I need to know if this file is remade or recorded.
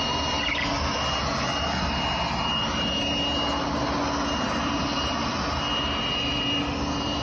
recorded